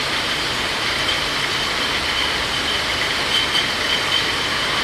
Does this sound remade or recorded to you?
recorded